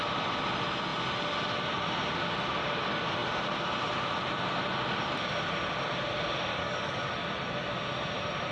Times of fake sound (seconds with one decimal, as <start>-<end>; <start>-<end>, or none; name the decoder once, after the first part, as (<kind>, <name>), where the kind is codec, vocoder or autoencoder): 6.5-7.0 (codec, DAC)